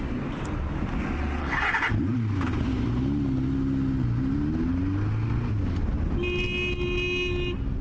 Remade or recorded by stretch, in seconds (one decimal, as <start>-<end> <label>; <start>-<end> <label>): 0.0-1.4 recorded; 1.4-1.9 remade; 1.9-7.8 recorded